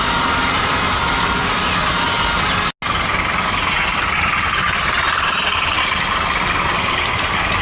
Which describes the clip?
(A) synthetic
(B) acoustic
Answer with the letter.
B